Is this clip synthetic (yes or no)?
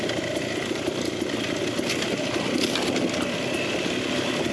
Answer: no